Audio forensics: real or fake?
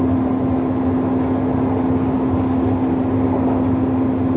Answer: real